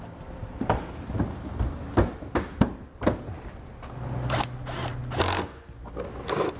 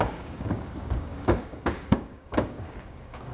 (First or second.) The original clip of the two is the first